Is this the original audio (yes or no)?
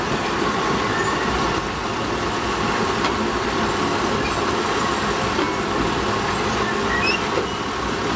yes